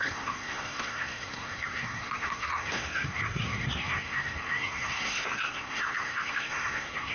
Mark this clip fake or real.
fake